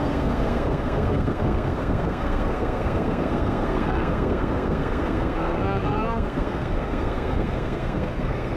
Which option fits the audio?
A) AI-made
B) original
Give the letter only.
A